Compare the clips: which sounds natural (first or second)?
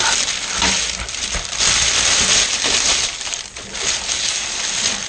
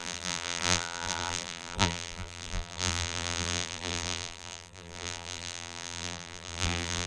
first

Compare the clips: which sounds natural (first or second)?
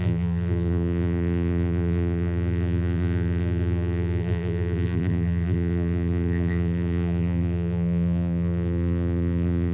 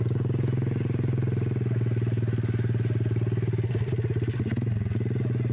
second